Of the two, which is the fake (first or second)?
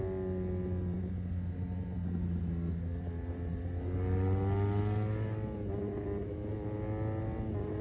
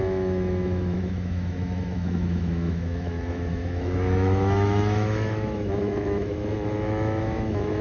second